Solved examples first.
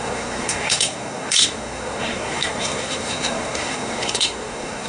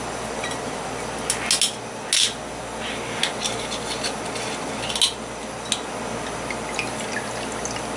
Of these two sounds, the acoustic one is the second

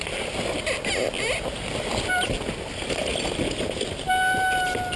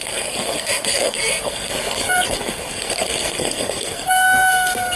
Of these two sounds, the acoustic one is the first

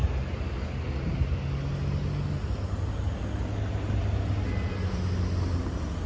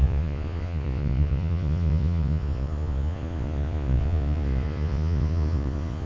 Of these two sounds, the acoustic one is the first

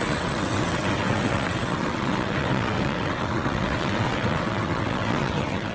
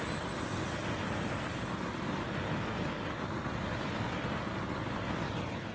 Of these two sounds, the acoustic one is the second